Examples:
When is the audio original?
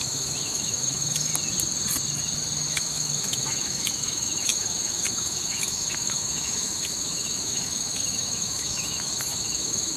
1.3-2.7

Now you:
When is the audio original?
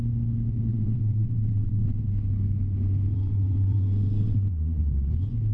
0.0-0.7; 2.0-3.1; 5.1-5.5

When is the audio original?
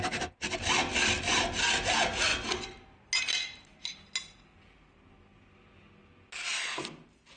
0.0-7.4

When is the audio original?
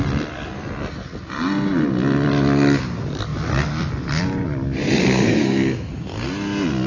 0.0-5.0; 5.9-6.9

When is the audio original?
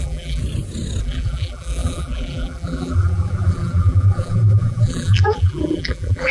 0.4-1.0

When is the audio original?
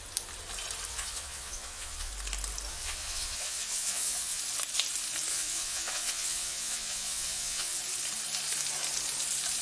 0.0-0.9; 2.1-2.7; 4.4-5.3; 7.8-9.6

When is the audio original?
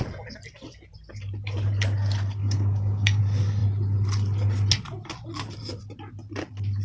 0.0-2.4; 3.2-6.8